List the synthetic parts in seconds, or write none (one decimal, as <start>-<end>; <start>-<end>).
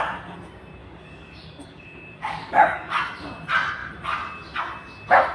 0.8-3.0